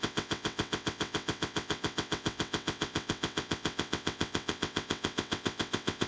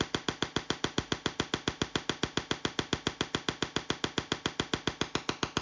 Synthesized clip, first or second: first